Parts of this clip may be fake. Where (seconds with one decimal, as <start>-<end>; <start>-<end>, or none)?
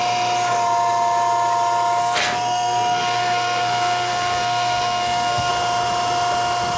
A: 2.0-5.5